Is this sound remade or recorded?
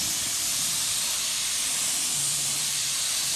remade